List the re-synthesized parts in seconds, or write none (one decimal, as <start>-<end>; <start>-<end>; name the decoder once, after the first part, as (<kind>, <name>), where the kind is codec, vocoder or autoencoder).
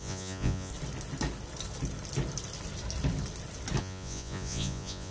0.0-0.7 (vocoder, Vocos); 3.8-5.1